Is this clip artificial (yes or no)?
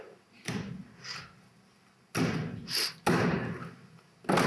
no